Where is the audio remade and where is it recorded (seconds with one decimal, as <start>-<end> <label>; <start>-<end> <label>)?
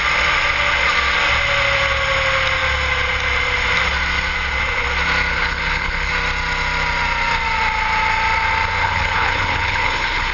0.0-5.3 recorded; 5.3-6.1 remade; 6.1-8.8 recorded; 8.8-10.3 remade